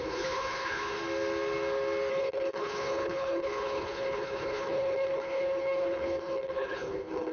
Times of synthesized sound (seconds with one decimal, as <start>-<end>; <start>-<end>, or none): 0.0-1.0; 2.1-7.3